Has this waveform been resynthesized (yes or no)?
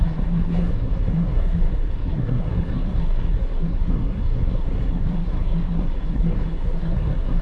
yes